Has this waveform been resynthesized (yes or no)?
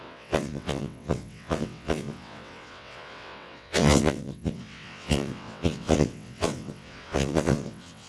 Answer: yes